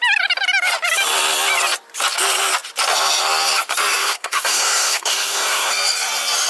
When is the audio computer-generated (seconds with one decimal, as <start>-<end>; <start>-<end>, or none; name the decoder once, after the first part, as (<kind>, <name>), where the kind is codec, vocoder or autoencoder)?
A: 4.0-5.7 (codec, SNAC)